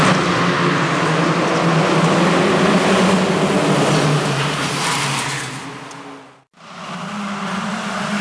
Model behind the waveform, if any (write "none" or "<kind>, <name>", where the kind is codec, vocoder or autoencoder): none